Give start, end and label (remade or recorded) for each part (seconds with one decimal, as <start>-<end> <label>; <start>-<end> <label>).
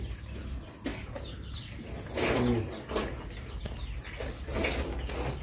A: 0.0-5.4 recorded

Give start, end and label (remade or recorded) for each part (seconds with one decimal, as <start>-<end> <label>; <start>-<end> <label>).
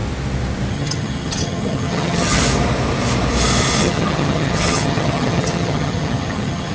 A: 0.0-0.7 recorded; 0.7-2.4 remade; 2.4-3.8 recorded; 3.8-6.7 remade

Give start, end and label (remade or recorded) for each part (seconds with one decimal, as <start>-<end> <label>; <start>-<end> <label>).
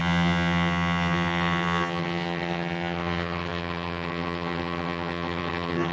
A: 0.0-5.9 remade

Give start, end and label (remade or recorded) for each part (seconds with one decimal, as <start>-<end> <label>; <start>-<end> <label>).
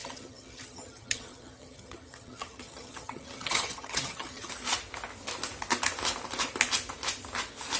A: 0.0-4.5 remade; 4.5-7.8 recorded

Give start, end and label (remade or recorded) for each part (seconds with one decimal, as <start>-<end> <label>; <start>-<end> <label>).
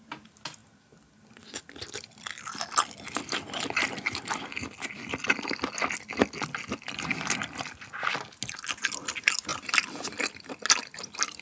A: 0.0-11.4 recorded